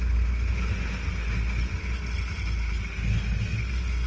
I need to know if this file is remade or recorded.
recorded